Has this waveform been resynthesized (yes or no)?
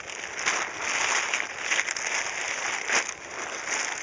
no